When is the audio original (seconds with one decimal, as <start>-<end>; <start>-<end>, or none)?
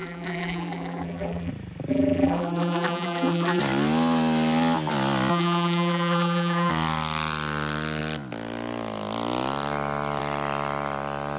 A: 1.5-1.9; 3.6-5.3; 6.7-11.4